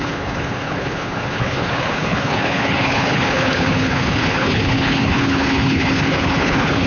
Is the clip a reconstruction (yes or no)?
yes